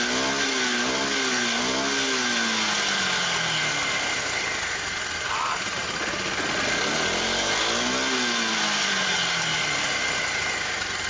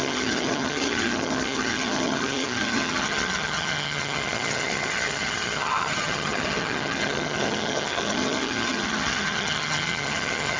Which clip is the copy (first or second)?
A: second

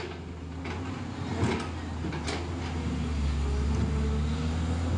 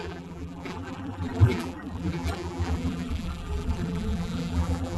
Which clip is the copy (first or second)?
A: second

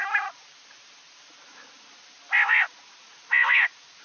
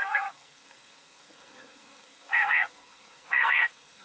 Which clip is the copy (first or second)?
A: second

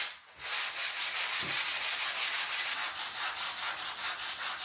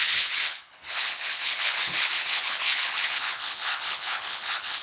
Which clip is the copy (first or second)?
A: second